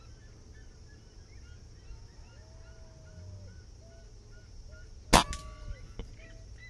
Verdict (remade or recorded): recorded